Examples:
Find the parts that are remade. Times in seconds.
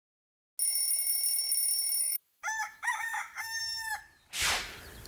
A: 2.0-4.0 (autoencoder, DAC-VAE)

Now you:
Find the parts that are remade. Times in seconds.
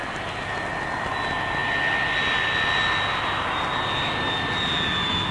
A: none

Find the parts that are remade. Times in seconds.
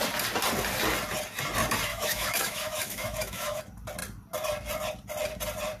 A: 1.9-3.6 (autoencoder, DAC-VAE)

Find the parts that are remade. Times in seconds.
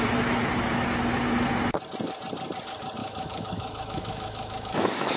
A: 3.0-5.2 (autoencoder, DAC-VAE)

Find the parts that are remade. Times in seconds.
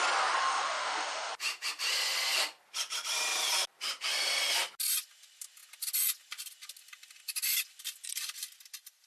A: 0.4-1.3 (autoencoder, DAC-VAE)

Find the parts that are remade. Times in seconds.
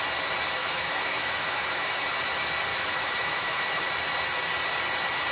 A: 0.6-2.1 (autoencoder, DAC-VAE); 2.7-3.8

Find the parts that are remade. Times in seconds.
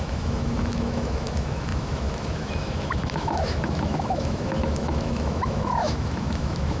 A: 0.0-6.8 (autoencoder, DAC-VAE)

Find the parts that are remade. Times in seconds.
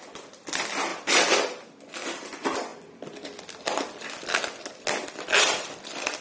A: none